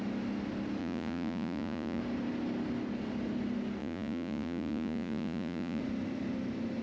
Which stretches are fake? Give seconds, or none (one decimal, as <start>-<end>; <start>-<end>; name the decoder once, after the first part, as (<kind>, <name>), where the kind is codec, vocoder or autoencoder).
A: 0.8-2.0 (vocoder, Vocos); 3.8-5.8

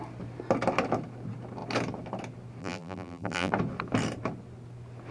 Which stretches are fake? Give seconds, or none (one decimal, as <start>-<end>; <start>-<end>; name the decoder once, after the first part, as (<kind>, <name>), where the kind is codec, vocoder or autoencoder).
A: 2.6-3.5 (vocoder, BigVGAN v2)

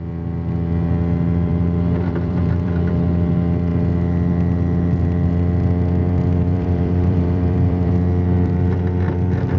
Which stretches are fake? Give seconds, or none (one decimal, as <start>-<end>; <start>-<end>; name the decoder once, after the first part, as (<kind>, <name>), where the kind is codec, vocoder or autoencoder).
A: 1.5-2.9 (vocoder, BigVGAN v2); 6.0-7.9

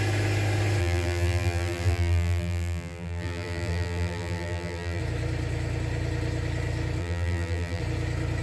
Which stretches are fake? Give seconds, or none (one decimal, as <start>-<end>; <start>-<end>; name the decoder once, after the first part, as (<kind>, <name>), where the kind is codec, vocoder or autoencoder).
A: 0.8-5.0 (vocoder, BigVGAN v2); 7.0-7.8

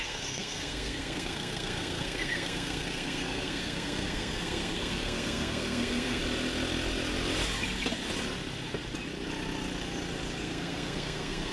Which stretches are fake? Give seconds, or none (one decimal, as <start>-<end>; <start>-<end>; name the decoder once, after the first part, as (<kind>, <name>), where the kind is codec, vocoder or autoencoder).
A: 0.0-6.2 (codec, SNAC); 10.4-11.5

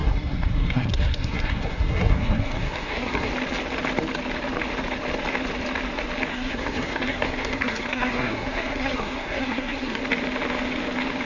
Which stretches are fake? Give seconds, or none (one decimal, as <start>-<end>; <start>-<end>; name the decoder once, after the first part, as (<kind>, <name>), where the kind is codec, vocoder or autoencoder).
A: 0.0-3.3 (codec, SNAC); 6.3-10.0

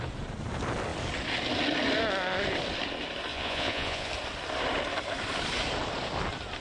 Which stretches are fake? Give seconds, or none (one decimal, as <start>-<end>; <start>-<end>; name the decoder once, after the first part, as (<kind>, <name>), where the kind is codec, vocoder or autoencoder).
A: 3.3-4.1 (vocoder, Vocos)

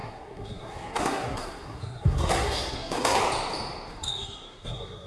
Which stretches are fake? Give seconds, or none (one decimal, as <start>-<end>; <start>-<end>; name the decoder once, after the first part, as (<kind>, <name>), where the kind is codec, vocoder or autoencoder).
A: 0.0-3.2 (codec, SNAC); 3.9-5.1